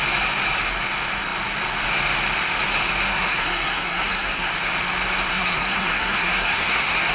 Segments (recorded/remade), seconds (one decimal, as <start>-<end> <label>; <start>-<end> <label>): 0.0-3.1 recorded; 3.1-4.5 remade; 4.5-5.3 recorded; 5.3-7.1 remade